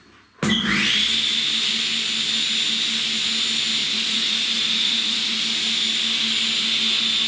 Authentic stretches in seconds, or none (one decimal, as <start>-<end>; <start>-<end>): 0.0-3.8; 5.4-7.3